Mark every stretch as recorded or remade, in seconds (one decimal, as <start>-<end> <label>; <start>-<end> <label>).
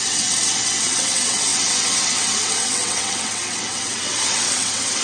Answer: 0.0-5.0 remade